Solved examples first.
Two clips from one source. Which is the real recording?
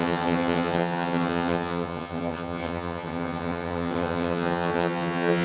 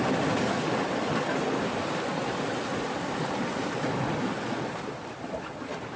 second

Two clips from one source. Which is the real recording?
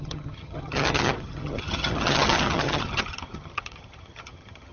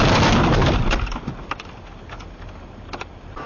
second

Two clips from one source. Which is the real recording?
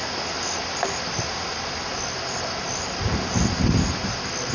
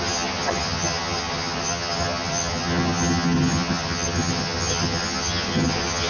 first